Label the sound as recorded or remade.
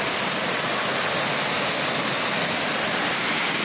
recorded